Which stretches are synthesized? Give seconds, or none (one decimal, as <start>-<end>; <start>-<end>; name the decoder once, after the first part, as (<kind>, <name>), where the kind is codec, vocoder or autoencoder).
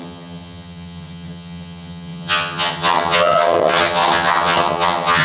0.0-5.2 (vocoder, HiFi-GAN)